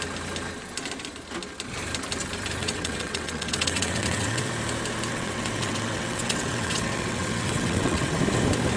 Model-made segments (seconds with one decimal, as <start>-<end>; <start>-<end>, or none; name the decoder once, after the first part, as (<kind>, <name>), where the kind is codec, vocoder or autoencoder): 2.6-4.5 (vocoder, WaveNeXt); 5.1-8.2